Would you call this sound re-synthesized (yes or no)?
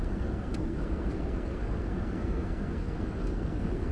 yes